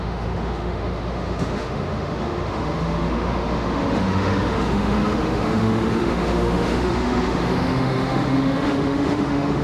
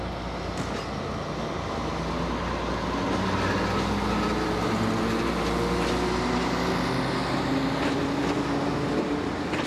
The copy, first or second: first